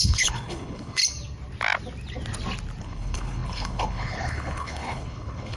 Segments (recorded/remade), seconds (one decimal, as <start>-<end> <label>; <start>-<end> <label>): 0.0-1.0 remade; 1.0-2.8 recorded; 2.8-5.6 remade